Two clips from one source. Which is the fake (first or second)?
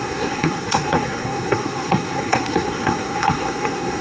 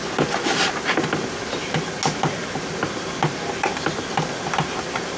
first